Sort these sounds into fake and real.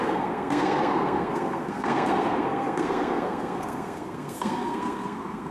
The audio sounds fake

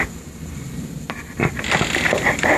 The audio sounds real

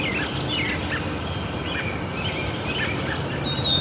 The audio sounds real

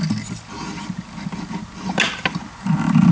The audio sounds real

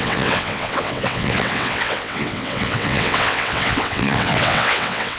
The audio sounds fake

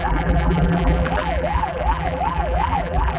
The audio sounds fake